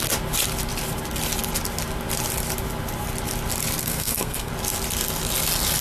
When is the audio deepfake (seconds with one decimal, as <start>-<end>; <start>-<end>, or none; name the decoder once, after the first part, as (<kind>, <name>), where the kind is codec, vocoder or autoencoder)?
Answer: 3.8-4.5 (codec, SNAC)